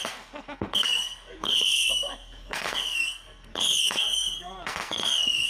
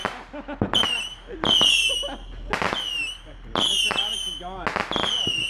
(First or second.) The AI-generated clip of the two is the first